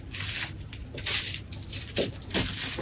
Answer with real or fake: fake